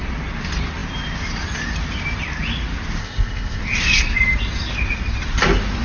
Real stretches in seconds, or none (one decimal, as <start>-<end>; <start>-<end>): 0.0-3.0; 3.6-5.8